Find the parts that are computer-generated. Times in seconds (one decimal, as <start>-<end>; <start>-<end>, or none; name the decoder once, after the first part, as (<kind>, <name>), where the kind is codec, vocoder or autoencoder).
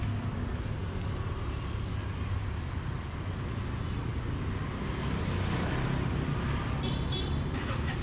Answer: none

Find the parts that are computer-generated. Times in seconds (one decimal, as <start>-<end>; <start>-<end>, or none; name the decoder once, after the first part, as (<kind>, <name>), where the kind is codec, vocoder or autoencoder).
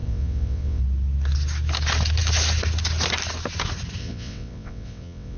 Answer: 0.0-0.8 (vocoder, WaveNeXt); 4.0-5.4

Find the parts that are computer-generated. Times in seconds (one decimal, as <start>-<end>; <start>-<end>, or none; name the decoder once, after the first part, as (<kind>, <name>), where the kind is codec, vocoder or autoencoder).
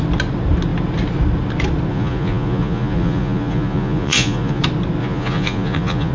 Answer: 1.9-4.6 (vocoder, Vocos); 5.0-6.1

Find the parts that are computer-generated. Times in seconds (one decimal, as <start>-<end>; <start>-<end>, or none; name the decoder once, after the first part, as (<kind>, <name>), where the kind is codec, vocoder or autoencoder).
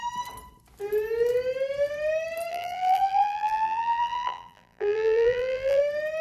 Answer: 2.5-5.8 (vocoder, BigVGAN v2)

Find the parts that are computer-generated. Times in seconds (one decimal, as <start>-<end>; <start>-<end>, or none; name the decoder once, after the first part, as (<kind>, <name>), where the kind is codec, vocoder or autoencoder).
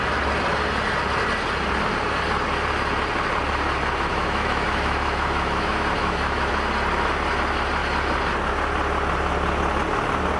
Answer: 4.1-6.5 (autoencoder, DAC-VAE)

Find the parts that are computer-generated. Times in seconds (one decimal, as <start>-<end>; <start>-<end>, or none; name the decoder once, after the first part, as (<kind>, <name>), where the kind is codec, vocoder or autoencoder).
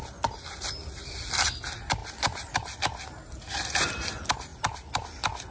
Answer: none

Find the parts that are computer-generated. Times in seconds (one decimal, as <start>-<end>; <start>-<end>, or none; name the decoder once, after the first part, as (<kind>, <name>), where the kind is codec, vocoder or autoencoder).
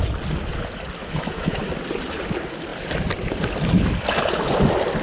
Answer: 1.0-1.7 (autoencoder, DAC-VAE)